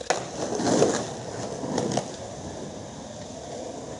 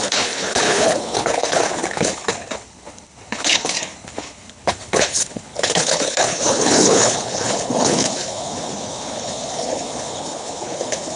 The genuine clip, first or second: first